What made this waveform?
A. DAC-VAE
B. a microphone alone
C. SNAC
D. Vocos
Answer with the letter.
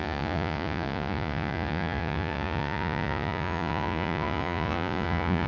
D